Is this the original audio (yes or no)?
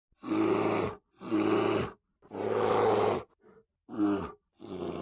yes